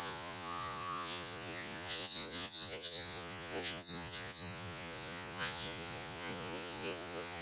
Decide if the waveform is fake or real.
fake